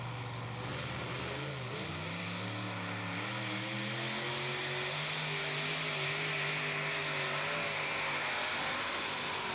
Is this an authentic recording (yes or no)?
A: yes